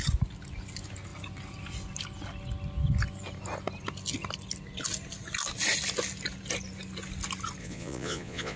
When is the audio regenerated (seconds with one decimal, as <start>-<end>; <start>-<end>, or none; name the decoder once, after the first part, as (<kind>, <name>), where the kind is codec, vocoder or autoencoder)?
7.6-8.6 (vocoder, Vocos)